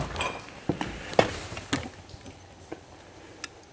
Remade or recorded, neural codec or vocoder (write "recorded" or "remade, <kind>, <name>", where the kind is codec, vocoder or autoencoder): recorded